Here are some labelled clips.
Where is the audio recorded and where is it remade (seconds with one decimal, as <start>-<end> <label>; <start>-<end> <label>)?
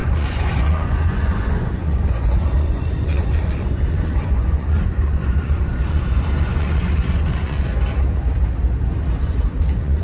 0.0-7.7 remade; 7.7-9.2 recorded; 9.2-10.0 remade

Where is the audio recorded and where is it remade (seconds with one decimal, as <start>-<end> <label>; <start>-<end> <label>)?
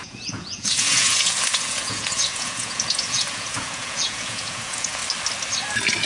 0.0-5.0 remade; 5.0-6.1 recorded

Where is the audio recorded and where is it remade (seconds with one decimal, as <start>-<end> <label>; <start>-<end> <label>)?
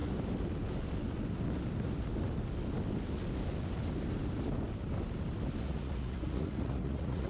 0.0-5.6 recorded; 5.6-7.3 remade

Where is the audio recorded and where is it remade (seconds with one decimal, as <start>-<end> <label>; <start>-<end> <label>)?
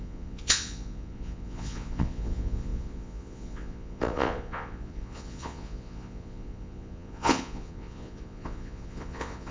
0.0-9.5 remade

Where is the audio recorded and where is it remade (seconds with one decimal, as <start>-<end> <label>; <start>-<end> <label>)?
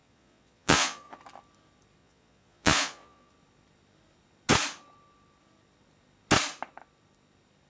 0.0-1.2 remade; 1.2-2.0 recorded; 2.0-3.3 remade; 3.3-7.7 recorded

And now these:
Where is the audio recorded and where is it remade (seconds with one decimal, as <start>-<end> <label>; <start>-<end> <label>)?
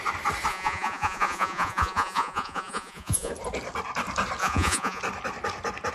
0.0-0.5 recorded; 0.5-3.3 remade; 3.3-4.4 recorded; 4.4-5.0 remade; 5.0-5.9 recorded